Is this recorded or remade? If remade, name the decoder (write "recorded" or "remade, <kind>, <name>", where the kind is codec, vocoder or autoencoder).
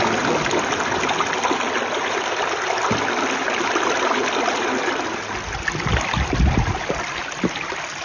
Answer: recorded